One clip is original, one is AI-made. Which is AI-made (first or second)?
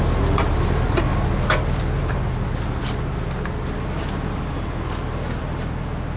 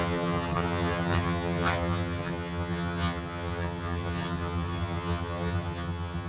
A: second